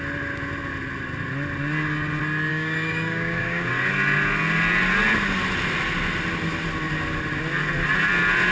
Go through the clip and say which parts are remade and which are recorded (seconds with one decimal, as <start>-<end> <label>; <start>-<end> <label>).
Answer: 0.0-2.5 recorded; 2.5-3.7 remade; 3.7-8.5 recorded